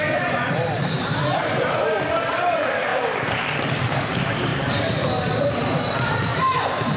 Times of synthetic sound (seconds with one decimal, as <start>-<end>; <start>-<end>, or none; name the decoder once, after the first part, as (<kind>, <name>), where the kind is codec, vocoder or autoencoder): 0.0-1.4 (vocoder, BigVGAN v2); 2.2-4.5; 5.5-7.0